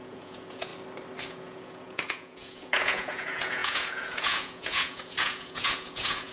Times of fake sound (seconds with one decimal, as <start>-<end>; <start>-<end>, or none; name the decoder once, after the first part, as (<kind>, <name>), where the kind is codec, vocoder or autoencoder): 0.0-0.7 (vocoder, Vocos); 1.3-6.3